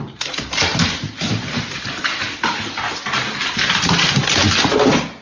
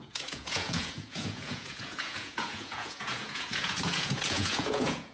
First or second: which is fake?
second